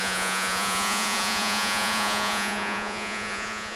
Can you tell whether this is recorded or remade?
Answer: remade